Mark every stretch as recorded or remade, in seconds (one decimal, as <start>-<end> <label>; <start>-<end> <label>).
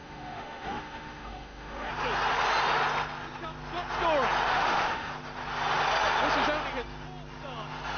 0.0-1.9 remade; 1.9-4.5 recorded; 4.5-5.1 remade; 5.1-8.0 recorded